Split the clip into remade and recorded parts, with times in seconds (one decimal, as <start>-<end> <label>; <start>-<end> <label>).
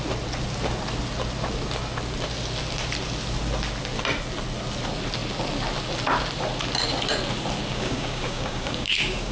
0.0-7.7 recorded; 7.7-9.3 remade